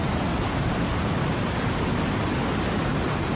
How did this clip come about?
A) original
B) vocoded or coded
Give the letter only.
A